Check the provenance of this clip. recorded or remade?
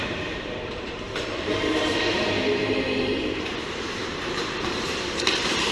remade